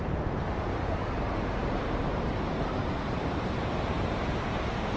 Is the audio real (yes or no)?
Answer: no